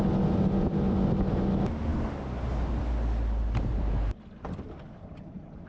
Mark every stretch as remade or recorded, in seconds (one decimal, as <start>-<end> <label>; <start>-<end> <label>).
0.0-5.7 recorded